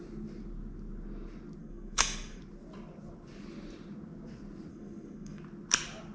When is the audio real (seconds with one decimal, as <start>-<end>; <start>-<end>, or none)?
0.0-1.6; 2.4-4.7; 5.4-6.1